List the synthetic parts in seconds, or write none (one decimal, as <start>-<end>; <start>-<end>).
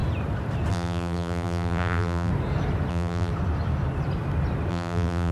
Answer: 0.7-2.3; 2.9-3.3; 4.7-5.3